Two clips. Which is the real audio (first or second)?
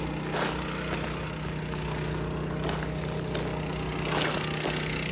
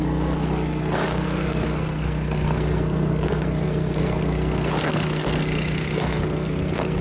first